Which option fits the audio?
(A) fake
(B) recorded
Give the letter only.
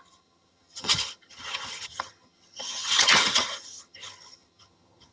A